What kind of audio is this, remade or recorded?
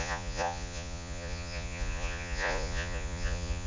remade